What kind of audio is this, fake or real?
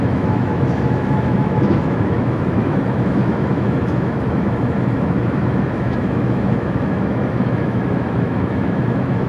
fake